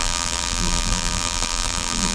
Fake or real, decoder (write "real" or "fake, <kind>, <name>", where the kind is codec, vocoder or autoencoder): fake, vocoder, BigVGAN v2